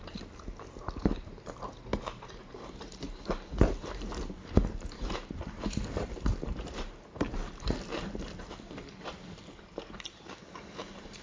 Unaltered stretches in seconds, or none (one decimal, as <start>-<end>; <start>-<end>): 7.4-9.0